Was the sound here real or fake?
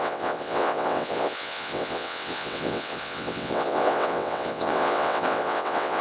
fake